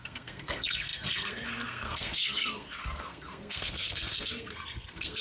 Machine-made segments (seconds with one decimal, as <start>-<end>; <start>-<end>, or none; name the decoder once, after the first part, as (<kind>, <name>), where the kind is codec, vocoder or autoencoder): 0.0-5.2 (codec, SNAC)